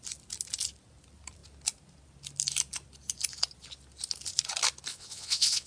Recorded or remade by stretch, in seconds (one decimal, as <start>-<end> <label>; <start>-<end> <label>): 0.0-4.9 recorded; 4.9-5.7 remade